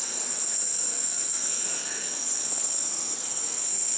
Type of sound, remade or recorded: remade